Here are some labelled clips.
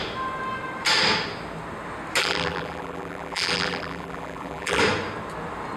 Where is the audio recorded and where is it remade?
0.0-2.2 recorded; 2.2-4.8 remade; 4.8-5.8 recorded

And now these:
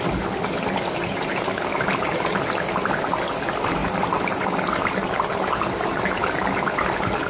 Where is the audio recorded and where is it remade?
0.0-7.3 recorded

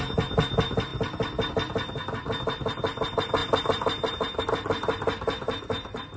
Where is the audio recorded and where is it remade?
0.0-6.2 recorded